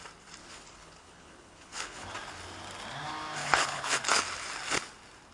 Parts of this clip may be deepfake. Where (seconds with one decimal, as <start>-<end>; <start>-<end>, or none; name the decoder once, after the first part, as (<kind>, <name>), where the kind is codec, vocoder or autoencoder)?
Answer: 0.4-2.1 (codec, HILCodec); 3.4-4.0

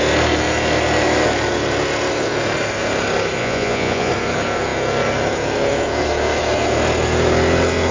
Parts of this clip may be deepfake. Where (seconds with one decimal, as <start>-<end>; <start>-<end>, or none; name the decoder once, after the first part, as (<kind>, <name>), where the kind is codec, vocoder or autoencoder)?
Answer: 3.4-4.1 (vocoder, Vocos)

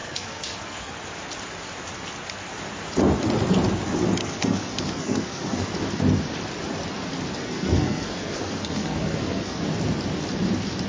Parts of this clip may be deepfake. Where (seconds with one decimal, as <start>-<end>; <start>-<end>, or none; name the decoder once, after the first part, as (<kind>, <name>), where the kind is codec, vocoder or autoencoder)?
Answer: 0.0-0.9 (codec, SNAC); 4.2-5.7; 7.4-9.6